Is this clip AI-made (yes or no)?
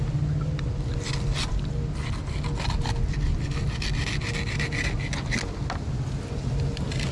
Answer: no